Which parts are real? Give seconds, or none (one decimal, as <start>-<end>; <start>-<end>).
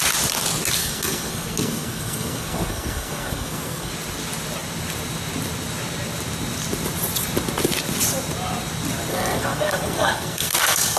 0.0-0.8; 3.9-9.1